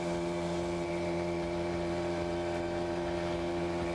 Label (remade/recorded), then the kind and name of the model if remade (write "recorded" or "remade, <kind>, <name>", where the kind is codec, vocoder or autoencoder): remade, vocoder, BigVGAN v2